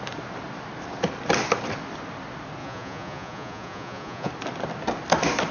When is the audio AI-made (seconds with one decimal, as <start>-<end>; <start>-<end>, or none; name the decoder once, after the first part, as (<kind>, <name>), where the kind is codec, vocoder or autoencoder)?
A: 2.6-4.3 (vocoder, Vocos)

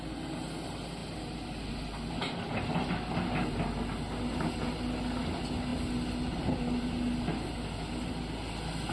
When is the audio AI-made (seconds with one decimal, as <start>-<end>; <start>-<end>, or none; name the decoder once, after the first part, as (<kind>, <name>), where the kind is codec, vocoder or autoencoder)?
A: none

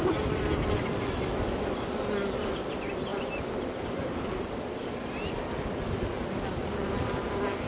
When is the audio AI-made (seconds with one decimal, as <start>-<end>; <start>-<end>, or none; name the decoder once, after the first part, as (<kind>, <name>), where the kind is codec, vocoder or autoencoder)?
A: none

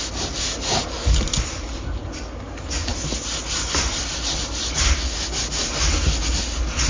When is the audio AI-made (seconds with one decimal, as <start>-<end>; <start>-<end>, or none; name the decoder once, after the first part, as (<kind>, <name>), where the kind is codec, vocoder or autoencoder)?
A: none

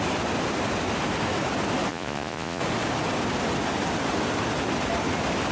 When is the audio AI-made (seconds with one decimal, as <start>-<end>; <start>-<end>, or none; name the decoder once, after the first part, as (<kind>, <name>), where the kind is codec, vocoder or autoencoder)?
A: 1.9-2.6 (vocoder, Vocos)

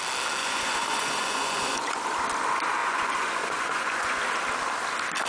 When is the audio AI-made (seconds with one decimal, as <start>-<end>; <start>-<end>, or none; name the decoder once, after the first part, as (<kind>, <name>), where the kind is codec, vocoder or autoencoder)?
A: 0.4-2.0 (vocoder, Vocos); 2.8-4.2